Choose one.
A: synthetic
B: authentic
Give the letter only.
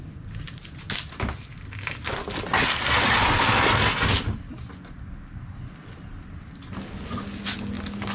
B